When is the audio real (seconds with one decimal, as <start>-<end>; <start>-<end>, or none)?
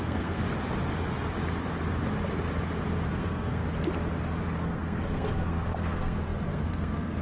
0.4-3.1; 3.6-4.6